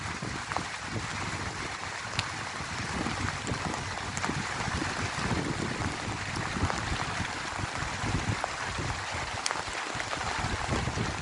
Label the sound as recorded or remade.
recorded